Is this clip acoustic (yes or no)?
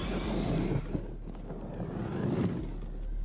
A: yes